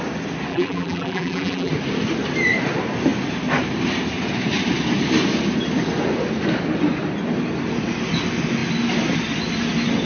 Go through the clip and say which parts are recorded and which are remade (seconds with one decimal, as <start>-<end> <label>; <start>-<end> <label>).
0.0-0.5 recorded; 0.5-1.7 remade; 1.7-10.1 recorded